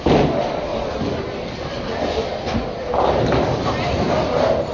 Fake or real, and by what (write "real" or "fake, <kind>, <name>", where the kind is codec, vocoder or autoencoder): real